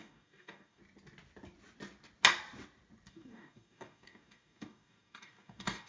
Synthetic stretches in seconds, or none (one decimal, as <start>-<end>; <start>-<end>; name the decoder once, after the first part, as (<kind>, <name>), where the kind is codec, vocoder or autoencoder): 0.0-0.8 (codec, DAC); 3.1-5.9